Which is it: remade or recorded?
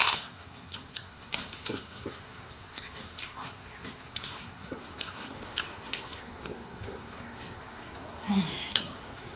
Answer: remade